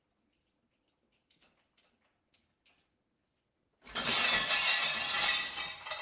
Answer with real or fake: real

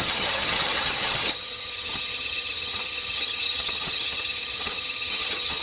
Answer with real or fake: fake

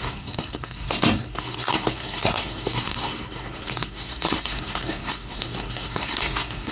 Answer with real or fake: fake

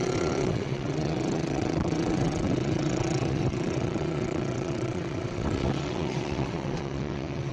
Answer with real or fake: fake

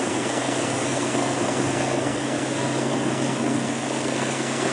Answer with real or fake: fake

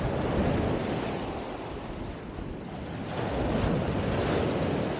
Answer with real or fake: real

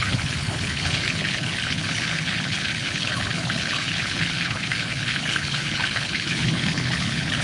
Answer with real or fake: fake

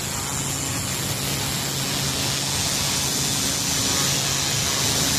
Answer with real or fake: real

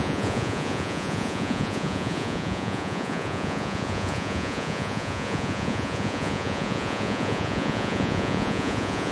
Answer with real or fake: fake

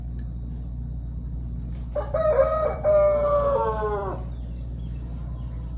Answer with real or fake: fake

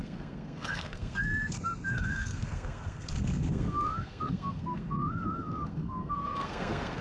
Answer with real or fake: fake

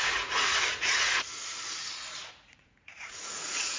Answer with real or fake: fake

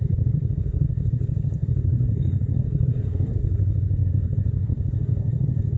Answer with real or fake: fake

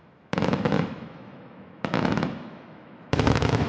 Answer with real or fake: fake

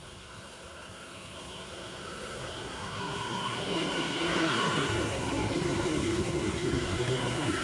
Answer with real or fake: fake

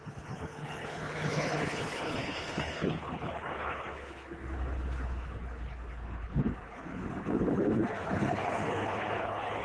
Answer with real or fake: fake